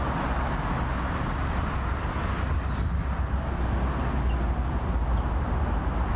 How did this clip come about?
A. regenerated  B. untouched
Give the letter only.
B